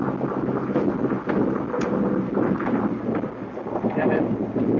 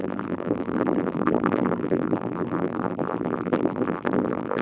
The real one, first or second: first